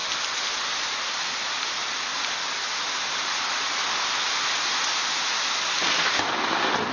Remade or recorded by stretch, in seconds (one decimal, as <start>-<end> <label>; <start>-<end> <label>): 0.0-6.9 recorded